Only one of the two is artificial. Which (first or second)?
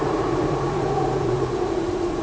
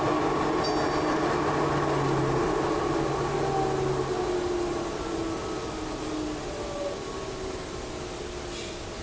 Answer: first